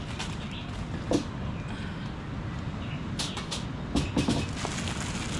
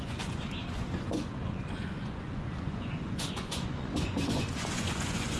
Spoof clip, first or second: second